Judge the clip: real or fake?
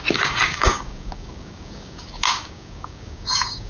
fake